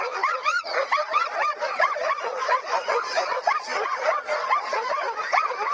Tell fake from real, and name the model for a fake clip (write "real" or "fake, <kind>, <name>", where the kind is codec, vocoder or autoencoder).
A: fake, vocoder, Vocos